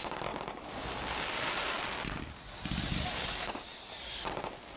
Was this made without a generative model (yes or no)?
yes